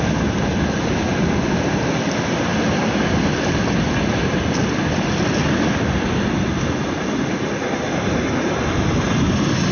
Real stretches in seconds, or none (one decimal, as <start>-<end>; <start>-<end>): 0.0-9.7

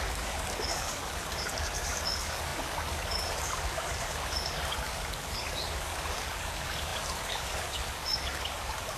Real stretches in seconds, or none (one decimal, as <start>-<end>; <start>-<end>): none